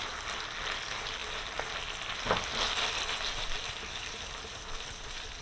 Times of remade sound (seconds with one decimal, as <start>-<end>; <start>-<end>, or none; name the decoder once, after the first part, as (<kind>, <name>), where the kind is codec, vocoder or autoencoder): none